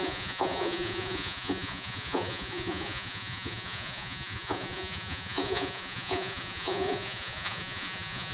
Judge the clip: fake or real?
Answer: fake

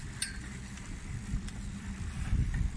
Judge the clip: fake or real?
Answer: fake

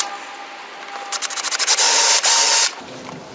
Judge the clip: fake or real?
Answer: real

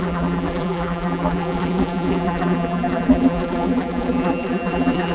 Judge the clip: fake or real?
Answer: fake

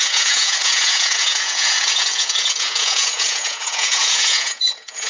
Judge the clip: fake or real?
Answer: fake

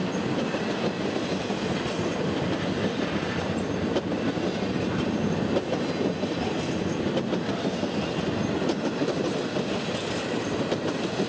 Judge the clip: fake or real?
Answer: real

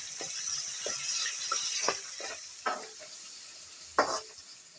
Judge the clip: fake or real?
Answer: real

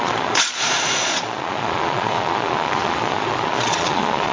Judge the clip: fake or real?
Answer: fake